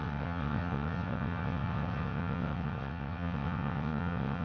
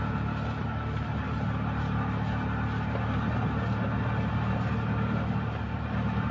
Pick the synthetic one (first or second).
first